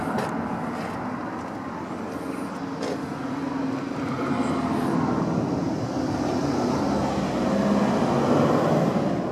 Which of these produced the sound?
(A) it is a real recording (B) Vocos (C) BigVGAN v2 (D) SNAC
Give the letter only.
A